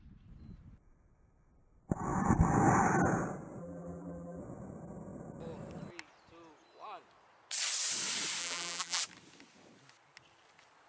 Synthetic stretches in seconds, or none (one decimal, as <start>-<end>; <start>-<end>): 3.6-4.4; 8.4-9.0